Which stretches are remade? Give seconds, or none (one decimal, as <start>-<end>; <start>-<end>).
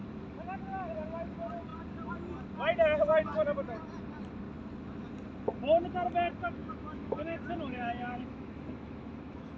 6.6-9.6